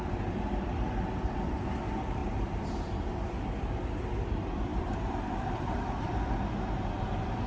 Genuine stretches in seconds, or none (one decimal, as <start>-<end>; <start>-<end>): 0.0-2.2; 2.7-4.7; 7.0-7.5

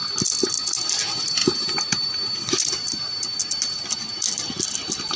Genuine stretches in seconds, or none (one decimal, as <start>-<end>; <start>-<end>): 0.0-1.4; 3.5-5.2

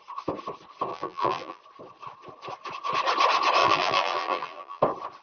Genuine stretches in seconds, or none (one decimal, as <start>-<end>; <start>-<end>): 0.0-0.9; 1.6-3.6; 4.8-5.2

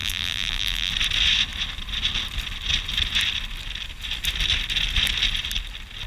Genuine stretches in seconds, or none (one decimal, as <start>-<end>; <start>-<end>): 0.9-6.1

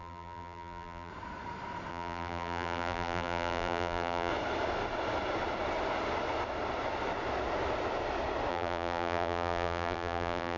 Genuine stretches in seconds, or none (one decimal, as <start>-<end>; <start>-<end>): 1.1-1.9; 4.3-8.5

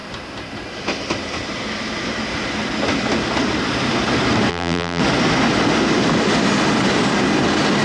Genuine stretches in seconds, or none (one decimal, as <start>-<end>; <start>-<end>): 0.0-4.5; 5.0-7.8

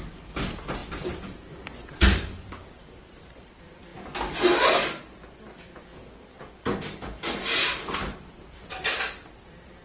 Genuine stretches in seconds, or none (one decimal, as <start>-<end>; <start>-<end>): 3.9-6.2

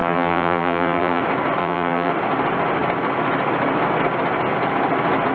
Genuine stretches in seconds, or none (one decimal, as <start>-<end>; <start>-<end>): 1.2-1.6; 2.1-5.3